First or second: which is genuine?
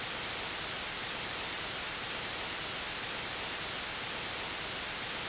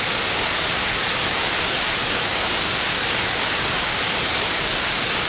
first